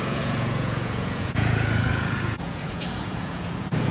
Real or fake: fake